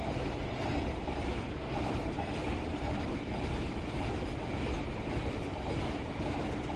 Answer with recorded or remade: recorded